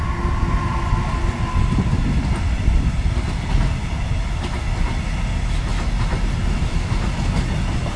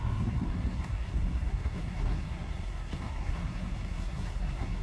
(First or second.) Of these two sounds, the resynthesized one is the second